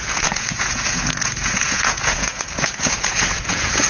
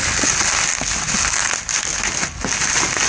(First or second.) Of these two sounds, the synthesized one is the first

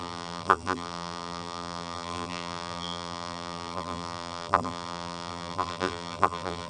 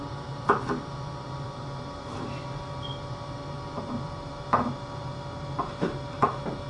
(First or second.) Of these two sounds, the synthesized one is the first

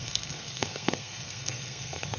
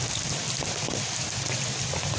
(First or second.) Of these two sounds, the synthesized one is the first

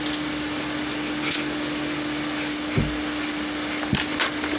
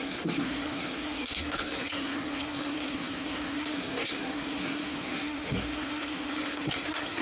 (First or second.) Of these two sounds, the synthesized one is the second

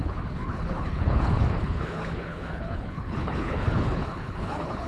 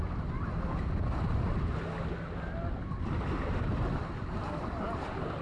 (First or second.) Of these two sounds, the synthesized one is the first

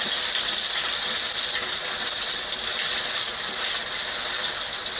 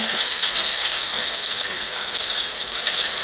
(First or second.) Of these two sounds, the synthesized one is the second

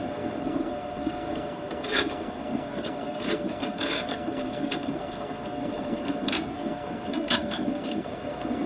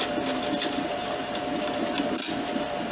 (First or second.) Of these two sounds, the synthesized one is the first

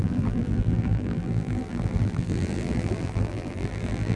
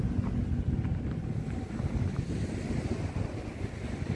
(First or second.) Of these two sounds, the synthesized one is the first